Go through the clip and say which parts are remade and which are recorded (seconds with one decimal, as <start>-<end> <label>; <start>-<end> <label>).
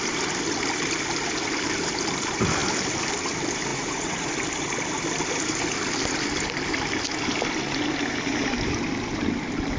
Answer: 0.0-3.7 recorded; 3.7-4.3 remade; 4.3-9.8 recorded